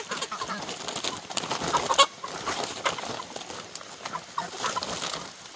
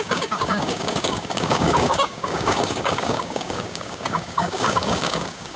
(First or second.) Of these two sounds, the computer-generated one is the second